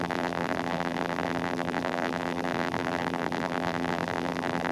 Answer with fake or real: fake